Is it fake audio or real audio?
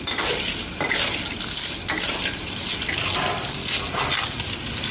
real